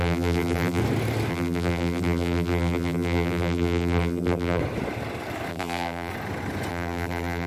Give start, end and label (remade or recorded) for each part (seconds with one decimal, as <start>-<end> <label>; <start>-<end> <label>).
0.0-0.8 remade; 0.8-1.3 recorded; 1.3-4.6 remade; 4.6-5.5 recorded; 5.5-6.1 remade; 6.1-6.7 recorded; 6.7-7.5 remade